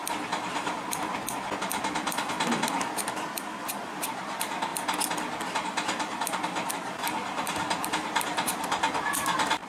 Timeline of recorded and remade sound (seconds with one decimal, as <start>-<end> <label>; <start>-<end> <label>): 0.0-3.6 recorded; 3.6-4.7 remade; 4.7-6.7 recorded; 6.7-9.7 remade